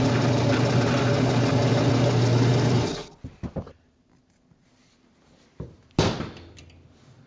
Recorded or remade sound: recorded